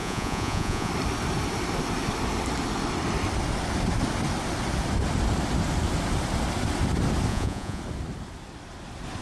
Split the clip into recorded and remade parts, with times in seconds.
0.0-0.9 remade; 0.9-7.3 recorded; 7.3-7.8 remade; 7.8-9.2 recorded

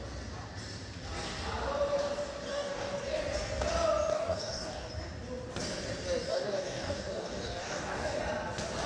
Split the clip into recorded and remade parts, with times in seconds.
0.0-2.5 recorded; 2.5-3.2 remade; 3.2-4.1 recorded; 4.1-4.9 remade; 4.9-6.3 recorded; 6.3-8.2 remade; 8.2-8.9 recorded

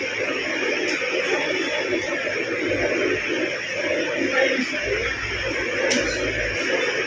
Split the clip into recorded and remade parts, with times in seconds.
0.0-7.1 recorded

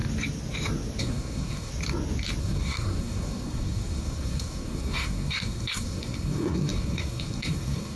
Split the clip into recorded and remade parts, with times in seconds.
0.0-1.0 recorded; 1.0-1.7 remade; 1.7-2.4 recorded; 2.4-8.0 remade

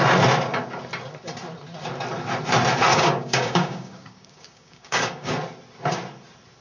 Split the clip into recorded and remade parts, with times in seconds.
0.0-2.9 recorded; 2.9-5.3 remade; 5.3-6.6 recorded

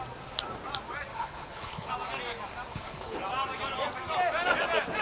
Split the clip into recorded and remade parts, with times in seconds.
0.0-1.1 recorded; 1.1-1.9 remade; 1.9-2.7 recorded; 2.7-3.2 remade; 3.2-5.0 recorded

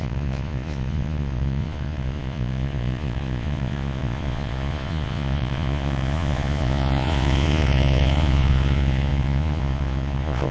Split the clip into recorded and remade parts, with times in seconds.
0.0-10.5 remade